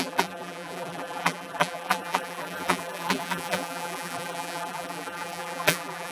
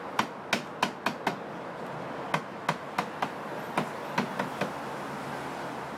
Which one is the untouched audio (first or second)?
second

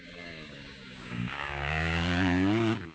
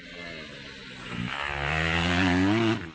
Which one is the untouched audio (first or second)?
second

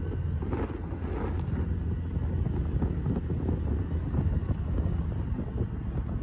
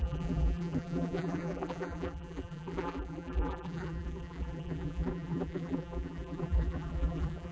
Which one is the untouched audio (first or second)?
first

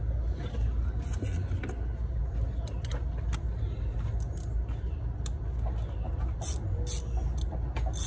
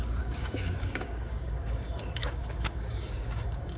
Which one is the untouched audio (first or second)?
first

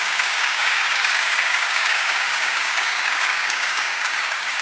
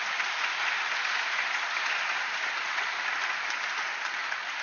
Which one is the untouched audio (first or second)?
second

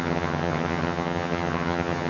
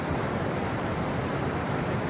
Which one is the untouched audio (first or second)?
second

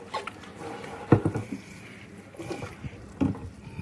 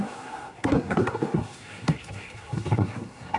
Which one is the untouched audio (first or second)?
first